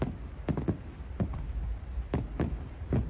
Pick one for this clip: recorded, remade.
remade